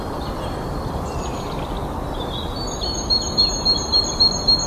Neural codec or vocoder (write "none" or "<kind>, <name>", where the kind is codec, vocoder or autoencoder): vocoder, BigVGAN v2